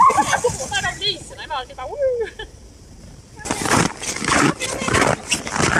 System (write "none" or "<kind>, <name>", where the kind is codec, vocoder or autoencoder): none